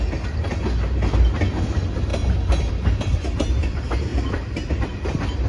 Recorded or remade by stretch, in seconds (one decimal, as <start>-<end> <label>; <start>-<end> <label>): 0.0-4.1 recorded; 4.1-4.7 remade; 4.7-5.5 recorded